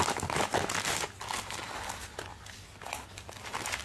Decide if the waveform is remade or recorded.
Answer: recorded